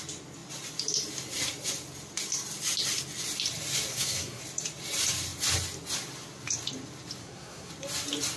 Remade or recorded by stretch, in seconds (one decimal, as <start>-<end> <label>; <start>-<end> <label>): 0.0-3.9 recorded; 3.9-4.4 remade; 4.4-7.2 recorded; 7.2-7.7 remade; 7.7-8.4 recorded